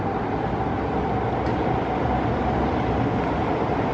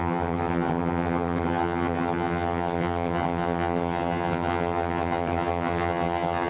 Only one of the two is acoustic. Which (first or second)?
first